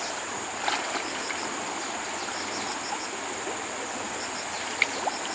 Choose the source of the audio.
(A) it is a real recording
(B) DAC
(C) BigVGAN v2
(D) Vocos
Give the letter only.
A